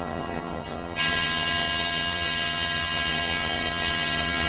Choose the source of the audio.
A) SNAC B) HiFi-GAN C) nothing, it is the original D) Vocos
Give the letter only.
B